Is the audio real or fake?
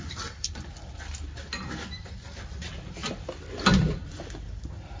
real